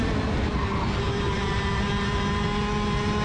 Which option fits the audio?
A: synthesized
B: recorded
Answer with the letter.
B